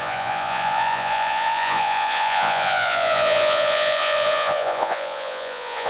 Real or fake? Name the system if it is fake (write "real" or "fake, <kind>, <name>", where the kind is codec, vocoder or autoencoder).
fake, vocoder, Vocos